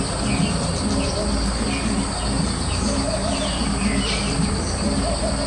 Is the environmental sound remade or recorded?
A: recorded